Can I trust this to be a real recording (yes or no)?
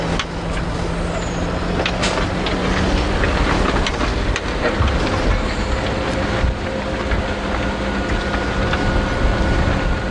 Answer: yes